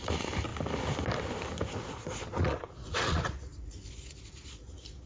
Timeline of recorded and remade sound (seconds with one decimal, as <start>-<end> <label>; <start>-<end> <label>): 0.0-1.8 recorded; 1.8-5.1 remade